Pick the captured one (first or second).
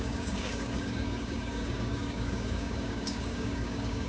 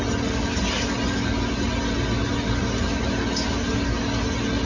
second